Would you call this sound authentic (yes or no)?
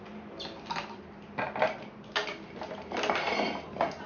yes